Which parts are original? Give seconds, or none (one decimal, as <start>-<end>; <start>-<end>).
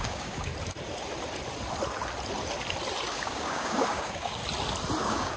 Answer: 0.5-3.1; 4.4-5.0